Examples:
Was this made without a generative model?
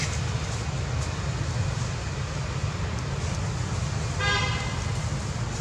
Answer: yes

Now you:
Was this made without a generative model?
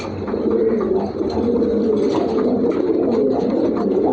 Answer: yes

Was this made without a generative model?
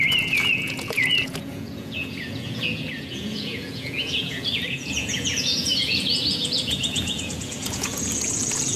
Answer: no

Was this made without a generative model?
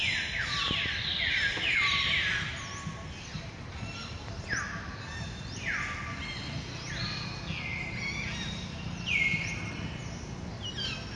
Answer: yes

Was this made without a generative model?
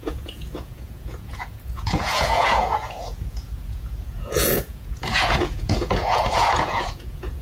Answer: no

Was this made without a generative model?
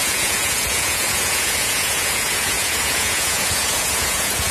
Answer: no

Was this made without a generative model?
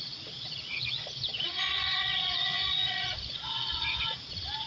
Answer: no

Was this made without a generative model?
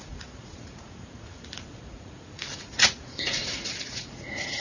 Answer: no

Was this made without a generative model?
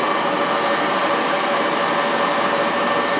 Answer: yes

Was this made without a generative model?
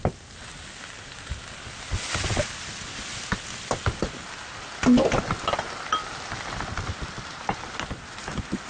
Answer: yes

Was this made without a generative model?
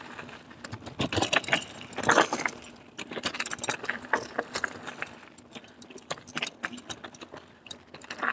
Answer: yes